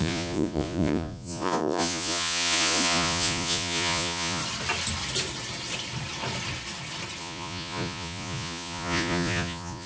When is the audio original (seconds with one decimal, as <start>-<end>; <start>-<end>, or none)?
4.4-7.2

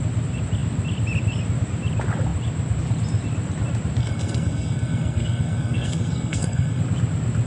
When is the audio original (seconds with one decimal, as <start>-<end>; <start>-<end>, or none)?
0.0-4.0; 6.8-7.5

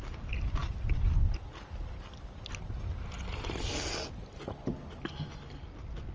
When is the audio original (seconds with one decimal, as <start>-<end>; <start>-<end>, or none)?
0.0-6.1

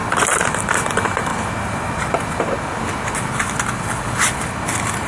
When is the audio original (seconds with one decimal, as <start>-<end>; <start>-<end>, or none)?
0.6-5.1